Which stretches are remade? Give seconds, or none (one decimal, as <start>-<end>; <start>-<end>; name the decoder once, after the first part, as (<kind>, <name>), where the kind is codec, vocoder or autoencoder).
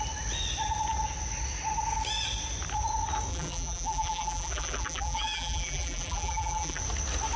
3.3-6.8 (vocoder, BigVGAN v2)